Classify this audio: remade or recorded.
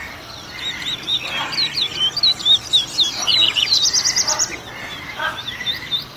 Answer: recorded